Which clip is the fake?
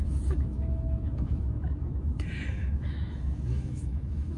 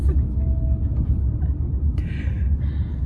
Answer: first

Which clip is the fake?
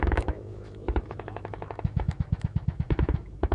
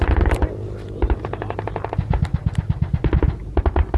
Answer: first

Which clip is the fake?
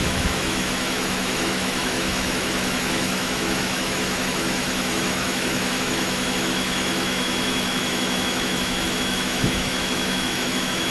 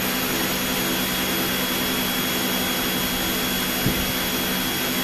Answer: first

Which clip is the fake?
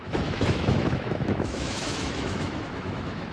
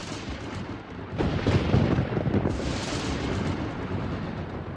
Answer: first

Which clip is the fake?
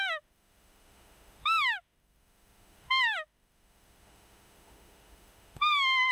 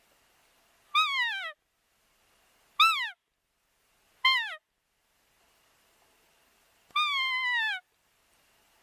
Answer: first